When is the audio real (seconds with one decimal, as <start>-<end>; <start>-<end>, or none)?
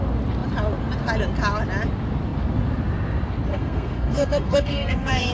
0.0-3.5